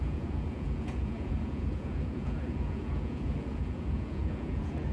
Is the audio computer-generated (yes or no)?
yes